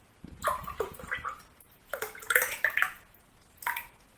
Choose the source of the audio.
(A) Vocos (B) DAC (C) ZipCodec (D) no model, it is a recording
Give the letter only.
A